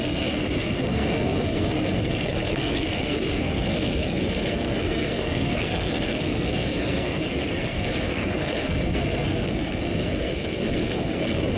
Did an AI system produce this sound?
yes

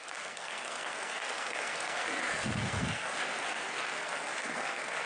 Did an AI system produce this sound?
yes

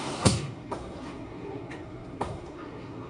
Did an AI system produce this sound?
yes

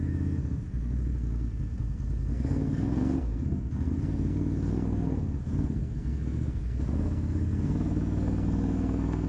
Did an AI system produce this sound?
yes